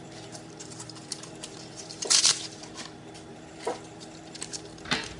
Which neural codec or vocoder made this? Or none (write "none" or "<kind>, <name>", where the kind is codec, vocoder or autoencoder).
vocoder, BigVGAN v2